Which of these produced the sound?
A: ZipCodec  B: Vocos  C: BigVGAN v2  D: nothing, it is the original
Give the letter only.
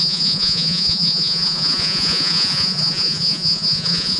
B